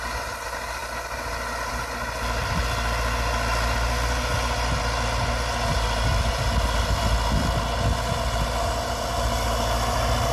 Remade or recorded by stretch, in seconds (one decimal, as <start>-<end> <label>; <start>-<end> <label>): 0.0-5.7 recorded; 5.7-6.3 remade; 6.3-10.3 recorded